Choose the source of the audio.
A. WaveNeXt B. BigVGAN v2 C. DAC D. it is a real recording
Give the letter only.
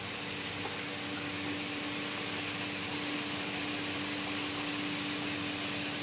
D